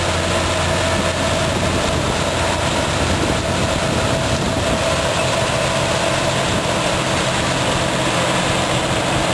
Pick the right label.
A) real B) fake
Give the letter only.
A